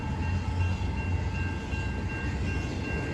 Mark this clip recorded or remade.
recorded